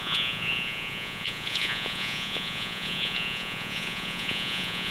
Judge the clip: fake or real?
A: fake